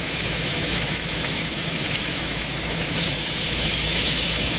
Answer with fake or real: fake